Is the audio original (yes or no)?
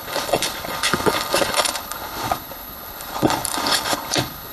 no